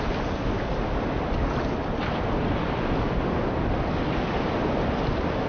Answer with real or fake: real